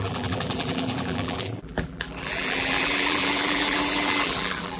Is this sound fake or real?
fake